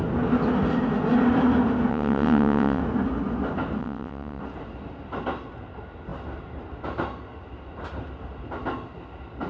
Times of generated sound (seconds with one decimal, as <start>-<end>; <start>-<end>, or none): 1.9-2.8; 3.8-4.4